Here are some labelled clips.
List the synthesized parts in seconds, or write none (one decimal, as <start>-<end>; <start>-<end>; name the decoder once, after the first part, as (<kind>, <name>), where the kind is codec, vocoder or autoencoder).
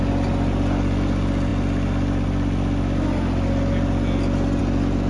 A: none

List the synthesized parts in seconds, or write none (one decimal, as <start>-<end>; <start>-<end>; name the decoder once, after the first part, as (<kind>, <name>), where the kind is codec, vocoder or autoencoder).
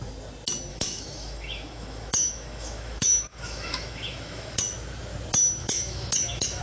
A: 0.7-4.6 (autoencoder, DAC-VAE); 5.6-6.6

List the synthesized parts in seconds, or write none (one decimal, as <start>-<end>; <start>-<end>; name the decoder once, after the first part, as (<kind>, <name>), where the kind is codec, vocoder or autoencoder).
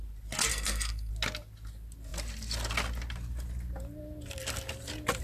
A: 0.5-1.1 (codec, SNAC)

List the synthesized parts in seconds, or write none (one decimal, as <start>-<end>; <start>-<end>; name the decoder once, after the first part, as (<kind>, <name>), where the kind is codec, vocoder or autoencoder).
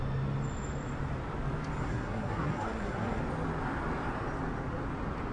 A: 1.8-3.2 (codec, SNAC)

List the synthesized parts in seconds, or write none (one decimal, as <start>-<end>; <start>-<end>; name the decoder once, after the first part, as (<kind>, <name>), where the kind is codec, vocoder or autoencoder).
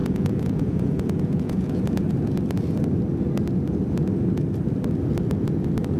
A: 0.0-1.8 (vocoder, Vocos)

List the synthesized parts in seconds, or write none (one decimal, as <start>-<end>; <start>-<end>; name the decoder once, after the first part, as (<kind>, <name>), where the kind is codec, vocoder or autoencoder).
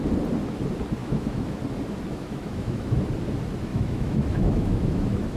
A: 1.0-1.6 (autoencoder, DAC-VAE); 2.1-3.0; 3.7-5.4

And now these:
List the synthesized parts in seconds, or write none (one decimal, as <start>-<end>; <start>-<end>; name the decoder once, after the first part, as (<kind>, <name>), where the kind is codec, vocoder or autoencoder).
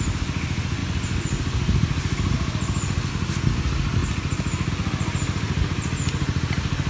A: none